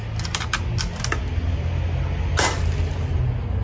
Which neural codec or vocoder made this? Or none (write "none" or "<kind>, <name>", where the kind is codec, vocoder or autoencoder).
none